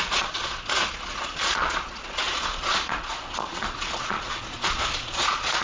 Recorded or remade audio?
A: remade